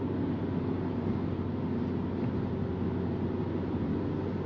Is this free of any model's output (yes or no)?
yes